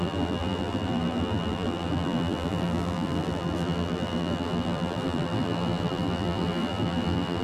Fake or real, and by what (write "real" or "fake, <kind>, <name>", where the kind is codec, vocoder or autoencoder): fake, vocoder, BigVGAN v2